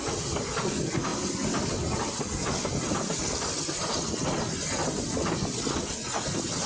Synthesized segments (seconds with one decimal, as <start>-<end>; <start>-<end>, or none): none